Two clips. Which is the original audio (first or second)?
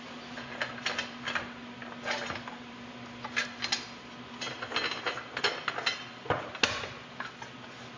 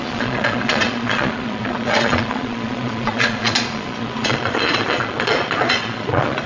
first